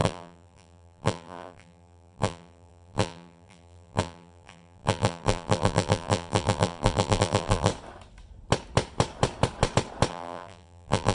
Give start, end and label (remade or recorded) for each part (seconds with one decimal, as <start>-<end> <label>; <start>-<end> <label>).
0.0-7.7 remade; 7.7-10.1 recorded; 10.1-11.1 remade